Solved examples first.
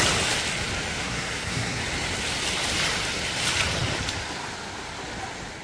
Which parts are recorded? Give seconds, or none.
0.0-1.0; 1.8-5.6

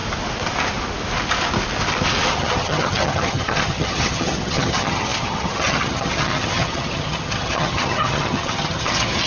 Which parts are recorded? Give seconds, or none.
0.0-2.3

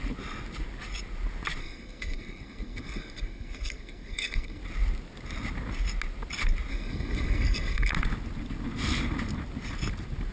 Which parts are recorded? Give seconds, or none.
0.0-1.6; 4.6-6.7; 7.9-10.3